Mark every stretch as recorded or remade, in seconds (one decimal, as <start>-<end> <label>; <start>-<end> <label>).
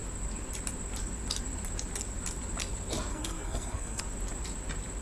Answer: 0.0-3.1 recorded; 3.1-4.0 remade; 4.0-5.0 recorded